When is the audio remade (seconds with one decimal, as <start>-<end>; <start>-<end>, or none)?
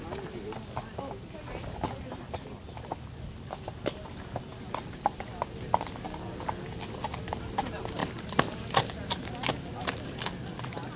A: none